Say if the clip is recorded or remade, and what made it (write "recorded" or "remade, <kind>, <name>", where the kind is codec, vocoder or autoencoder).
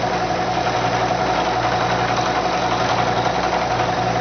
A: recorded